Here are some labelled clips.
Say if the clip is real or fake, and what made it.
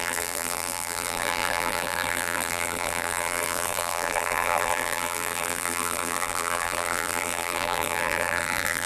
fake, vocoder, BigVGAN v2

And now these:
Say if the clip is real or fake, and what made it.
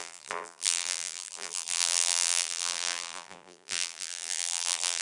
fake, vocoder, BigVGAN v2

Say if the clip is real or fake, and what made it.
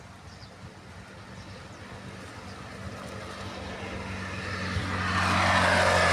real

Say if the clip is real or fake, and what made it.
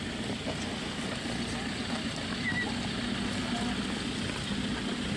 real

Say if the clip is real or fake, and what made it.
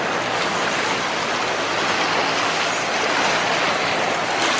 real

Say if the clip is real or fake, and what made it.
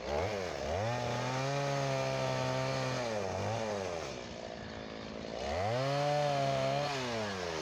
real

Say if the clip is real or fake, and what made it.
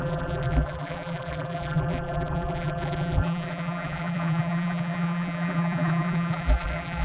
fake, vocoder, BigVGAN v2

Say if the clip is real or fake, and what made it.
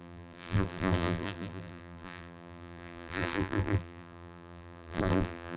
fake, vocoder, BigVGAN v2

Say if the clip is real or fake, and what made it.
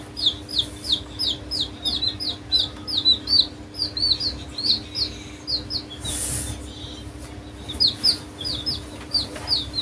real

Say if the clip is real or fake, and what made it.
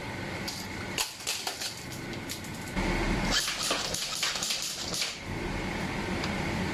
fake, vocoder, BigVGAN v2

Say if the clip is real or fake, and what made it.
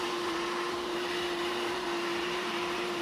fake, vocoder, BigVGAN v2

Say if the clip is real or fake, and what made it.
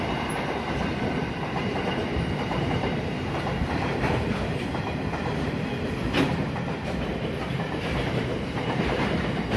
fake, vocoder, BigVGAN v2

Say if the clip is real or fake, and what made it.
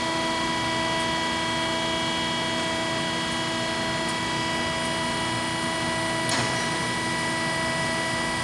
real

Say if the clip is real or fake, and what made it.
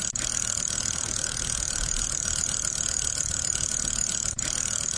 real